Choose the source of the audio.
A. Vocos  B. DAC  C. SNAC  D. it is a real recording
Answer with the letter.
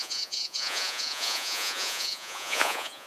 A